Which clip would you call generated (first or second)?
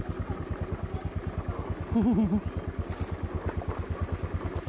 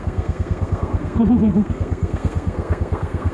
second